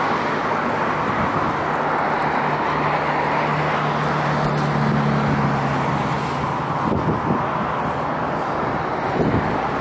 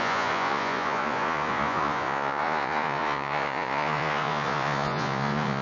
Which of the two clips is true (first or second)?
first